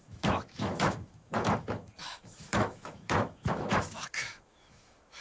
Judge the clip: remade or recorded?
remade